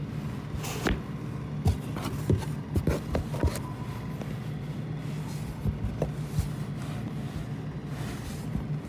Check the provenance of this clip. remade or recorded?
recorded